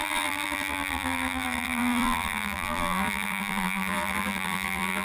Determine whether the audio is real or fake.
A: fake